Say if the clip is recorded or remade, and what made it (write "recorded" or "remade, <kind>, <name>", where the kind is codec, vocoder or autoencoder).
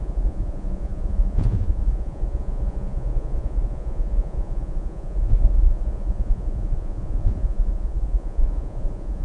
remade, vocoder, Vocos